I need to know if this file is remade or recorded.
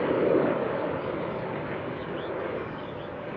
remade